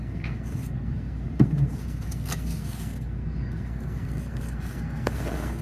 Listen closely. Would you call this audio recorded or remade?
remade